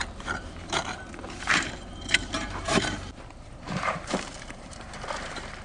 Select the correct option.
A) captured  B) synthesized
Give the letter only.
B